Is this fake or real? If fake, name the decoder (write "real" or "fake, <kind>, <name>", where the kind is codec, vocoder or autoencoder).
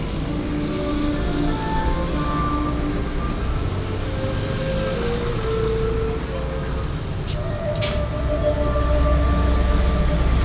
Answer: real